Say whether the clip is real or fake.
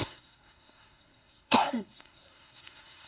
fake